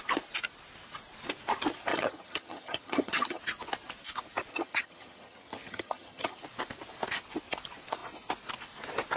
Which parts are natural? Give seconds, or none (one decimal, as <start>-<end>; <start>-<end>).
0.0-1.9; 3.4-4.5; 6.4-9.2